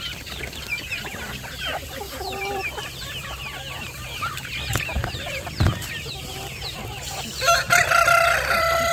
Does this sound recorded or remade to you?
remade